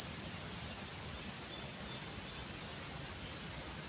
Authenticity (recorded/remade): recorded